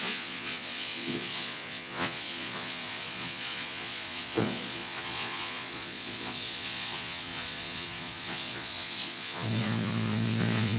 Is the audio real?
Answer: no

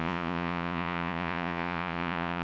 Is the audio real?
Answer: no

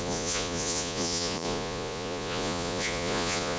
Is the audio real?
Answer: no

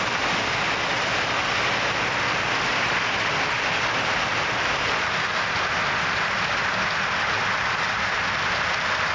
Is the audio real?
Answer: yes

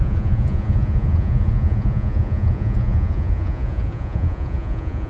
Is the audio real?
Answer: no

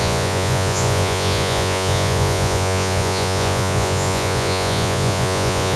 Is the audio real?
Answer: no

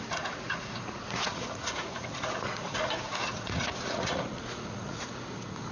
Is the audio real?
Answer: no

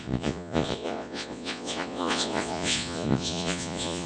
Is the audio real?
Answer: no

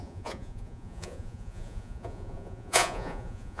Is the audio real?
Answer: no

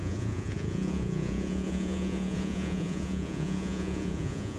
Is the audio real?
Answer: no